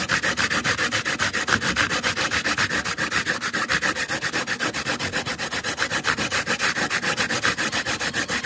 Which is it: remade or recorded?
recorded